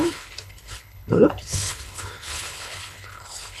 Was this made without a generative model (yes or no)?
no